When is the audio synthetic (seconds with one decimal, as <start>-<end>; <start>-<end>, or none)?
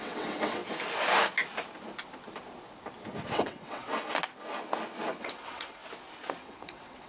0.0-0.6; 3.3-3.9; 5.2-5.8; 6.4-7.1